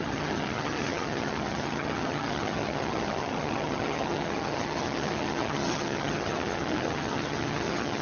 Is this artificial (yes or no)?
yes